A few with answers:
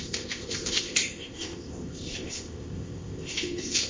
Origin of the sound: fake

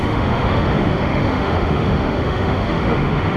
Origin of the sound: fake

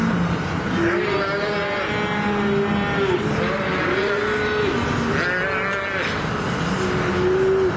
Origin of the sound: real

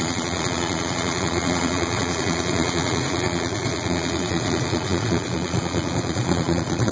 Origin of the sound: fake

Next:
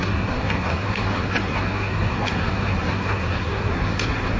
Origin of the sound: fake